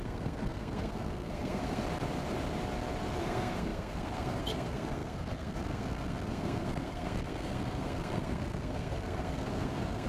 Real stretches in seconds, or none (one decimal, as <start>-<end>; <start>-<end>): 1.8-3.2